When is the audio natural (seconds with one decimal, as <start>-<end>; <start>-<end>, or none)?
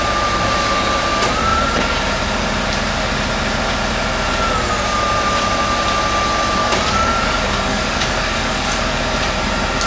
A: 0.0-6.6; 9.0-9.9